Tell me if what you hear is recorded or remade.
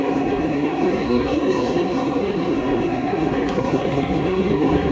remade